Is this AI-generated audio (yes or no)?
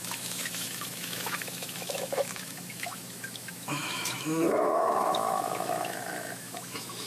yes